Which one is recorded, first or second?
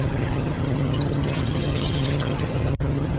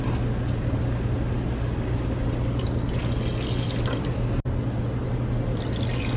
second